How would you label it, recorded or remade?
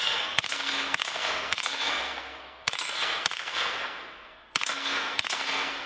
remade